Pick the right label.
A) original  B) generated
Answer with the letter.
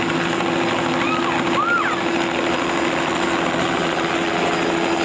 A